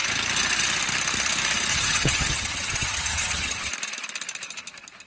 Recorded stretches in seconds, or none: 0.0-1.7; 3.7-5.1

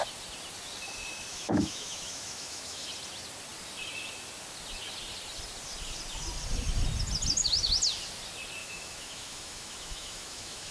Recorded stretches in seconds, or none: 0.0-1.3; 2.9-8.6